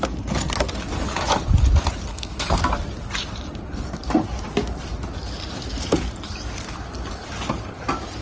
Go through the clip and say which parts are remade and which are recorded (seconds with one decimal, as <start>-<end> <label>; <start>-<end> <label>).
0.0-2.1 recorded; 2.1-2.6 remade; 2.6-8.2 recorded